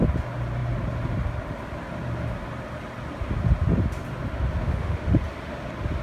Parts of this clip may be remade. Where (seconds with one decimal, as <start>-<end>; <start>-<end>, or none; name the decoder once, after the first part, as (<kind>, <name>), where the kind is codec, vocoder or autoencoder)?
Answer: 4.6-5.2 (autoencoder, DAC-VAE)